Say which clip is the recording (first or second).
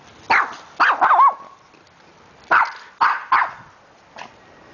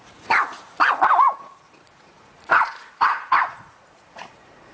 first